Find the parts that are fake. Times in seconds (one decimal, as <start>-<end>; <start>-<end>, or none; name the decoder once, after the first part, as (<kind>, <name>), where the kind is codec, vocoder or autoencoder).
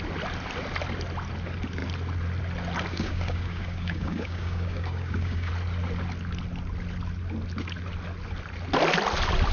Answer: 2.9-5.5 (codec, DAC)